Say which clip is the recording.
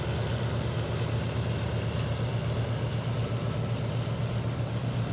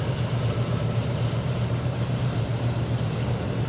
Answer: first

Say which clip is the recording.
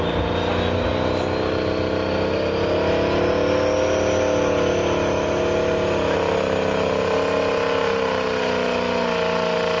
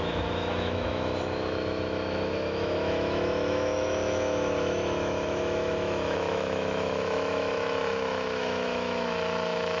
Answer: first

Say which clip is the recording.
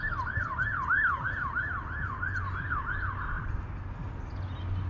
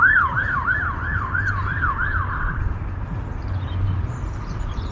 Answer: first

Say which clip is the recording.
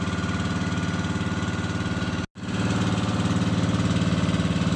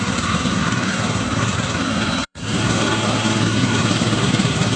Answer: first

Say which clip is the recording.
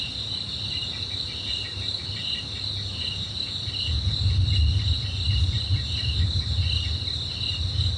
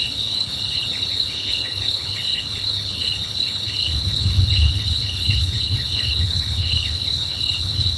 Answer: first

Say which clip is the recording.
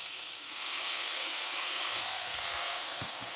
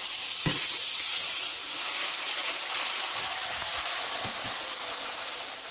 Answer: second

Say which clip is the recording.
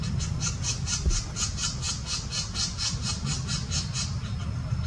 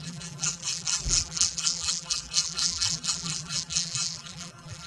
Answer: first